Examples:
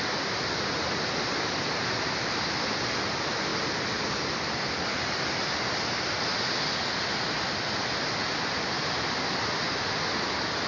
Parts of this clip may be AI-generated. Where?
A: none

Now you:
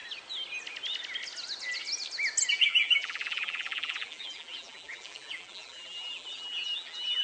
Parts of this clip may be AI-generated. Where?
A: 2.5-7.2 (vocoder, BigVGAN v2)